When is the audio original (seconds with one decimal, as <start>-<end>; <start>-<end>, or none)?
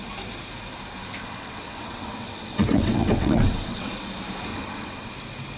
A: 0.0-1.2; 3.9-4.5; 5.1-5.6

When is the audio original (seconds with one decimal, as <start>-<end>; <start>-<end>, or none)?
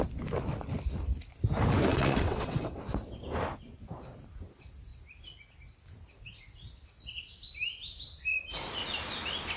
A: 0.0-1.9; 2.8-9.6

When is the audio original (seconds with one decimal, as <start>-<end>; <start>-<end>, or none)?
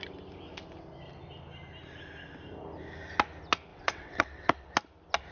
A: 0.0-3.7; 4.7-5.3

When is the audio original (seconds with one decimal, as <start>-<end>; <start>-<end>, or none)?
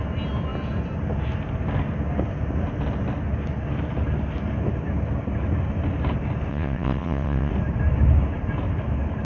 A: 0.0-6.5; 7.5-9.2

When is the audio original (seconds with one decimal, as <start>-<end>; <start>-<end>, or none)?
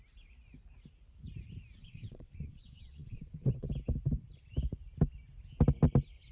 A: 0.0-1.8; 3.7-6.3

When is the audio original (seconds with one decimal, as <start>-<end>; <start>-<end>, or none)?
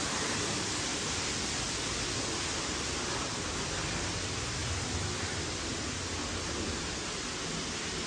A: 0.0-8.1